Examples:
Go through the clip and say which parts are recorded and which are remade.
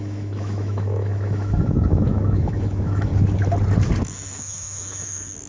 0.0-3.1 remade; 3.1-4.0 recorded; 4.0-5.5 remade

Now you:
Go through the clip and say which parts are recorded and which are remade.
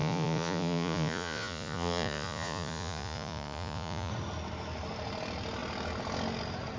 0.0-4.1 remade; 4.1-6.8 recorded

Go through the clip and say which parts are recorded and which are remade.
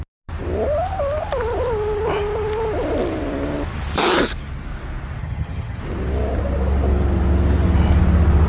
0.0-5.2 recorded; 5.2-5.8 remade; 5.8-8.5 recorded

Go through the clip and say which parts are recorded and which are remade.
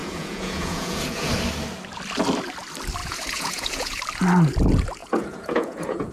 0.0-1.3 remade; 1.3-3.0 recorded; 3.0-4.0 remade; 4.0-5.0 recorded; 5.0-6.1 remade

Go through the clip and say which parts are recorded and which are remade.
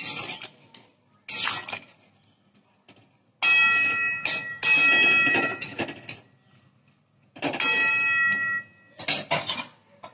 0.0-5.3 recorded; 5.3-5.8 remade; 5.8-10.1 recorded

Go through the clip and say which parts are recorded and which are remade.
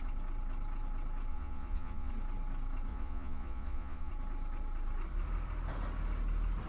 0.0-1.3 recorded; 1.3-2.1 remade; 2.1-2.9 recorded; 2.9-4.1 remade; 4.1-6.7 recorded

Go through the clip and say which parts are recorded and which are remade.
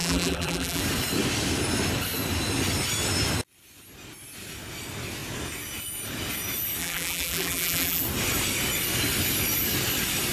0.0-0.8 remade; 0.8-6.8 recorded; 6.8-8.0 remade; 8.0-10.3 recorded